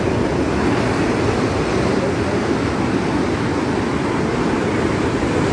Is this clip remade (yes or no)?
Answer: no